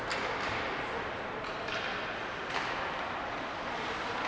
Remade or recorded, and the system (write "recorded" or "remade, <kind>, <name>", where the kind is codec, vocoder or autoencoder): recorded